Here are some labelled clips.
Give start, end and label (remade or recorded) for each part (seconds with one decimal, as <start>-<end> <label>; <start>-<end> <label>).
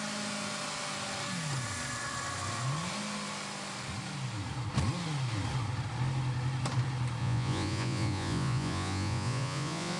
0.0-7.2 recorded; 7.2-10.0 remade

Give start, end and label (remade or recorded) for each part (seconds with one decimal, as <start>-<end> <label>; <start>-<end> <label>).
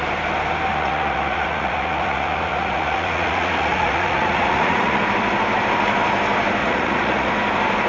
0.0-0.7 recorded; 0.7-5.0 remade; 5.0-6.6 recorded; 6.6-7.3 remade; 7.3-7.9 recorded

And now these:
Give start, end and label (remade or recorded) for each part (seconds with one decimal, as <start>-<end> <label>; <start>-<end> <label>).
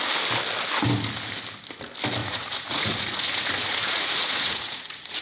0.0-2.2 recorded; 2.2-5.2 remade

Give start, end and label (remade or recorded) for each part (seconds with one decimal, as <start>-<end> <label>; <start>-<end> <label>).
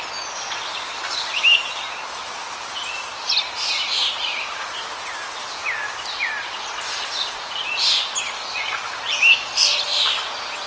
0.0-10.7 recorded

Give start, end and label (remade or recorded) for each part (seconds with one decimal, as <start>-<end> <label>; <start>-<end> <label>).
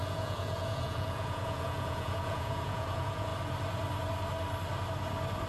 0.0-3.3 remade; 3.3-5.5 recorded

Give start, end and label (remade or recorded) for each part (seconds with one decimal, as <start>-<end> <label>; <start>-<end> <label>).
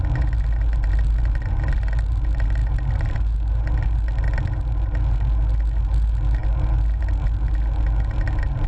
0.0-8.7 recorded